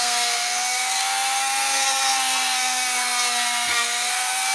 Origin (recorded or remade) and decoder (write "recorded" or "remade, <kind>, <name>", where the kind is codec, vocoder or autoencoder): remade, codec, SNAC